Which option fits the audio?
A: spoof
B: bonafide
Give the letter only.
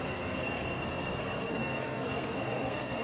A